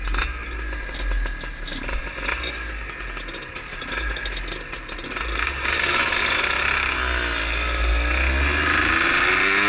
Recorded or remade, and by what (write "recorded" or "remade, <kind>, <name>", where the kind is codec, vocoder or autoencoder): recorded